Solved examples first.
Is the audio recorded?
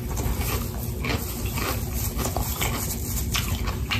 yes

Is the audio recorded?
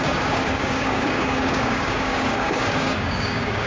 no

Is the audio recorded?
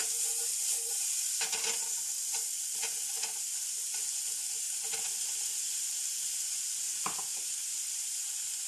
yes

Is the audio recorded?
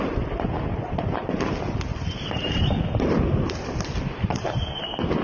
yes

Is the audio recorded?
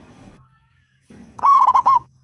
no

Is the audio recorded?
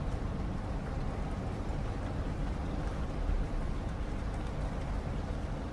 yes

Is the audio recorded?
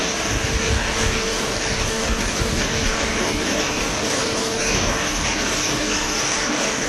no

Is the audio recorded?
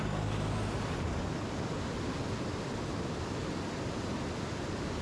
yes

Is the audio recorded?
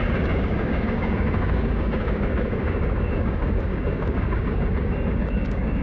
no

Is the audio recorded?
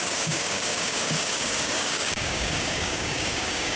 no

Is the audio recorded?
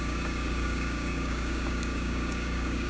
no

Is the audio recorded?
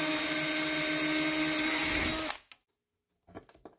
yes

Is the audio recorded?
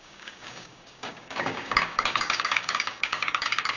no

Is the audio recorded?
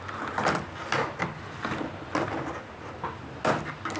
yes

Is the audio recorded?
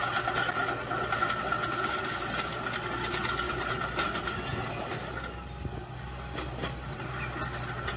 yes